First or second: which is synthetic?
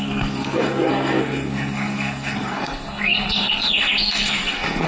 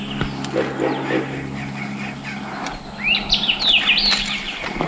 first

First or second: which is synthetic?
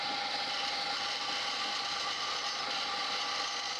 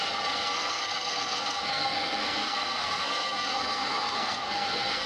second